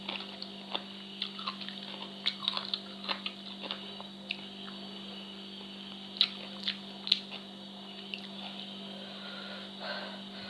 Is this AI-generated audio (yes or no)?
no